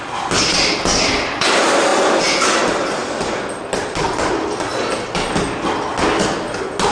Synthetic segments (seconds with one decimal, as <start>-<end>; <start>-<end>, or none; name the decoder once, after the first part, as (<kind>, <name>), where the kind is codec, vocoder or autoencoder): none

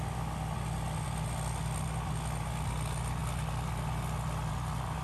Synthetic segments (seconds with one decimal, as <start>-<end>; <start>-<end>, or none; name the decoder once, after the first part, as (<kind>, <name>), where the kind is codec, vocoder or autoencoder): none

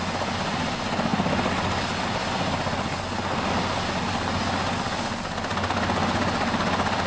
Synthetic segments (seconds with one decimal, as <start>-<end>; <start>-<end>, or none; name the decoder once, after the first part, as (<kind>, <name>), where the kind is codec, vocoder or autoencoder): none